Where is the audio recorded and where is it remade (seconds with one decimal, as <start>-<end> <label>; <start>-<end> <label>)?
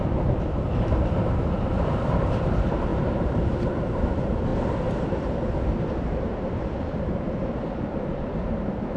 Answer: 0.0-4.5 remade; 4.5-6.2 recorded; 6.2-9.0 remade